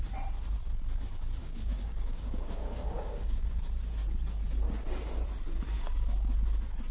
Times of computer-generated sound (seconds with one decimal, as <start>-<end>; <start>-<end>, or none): 1.4-3.6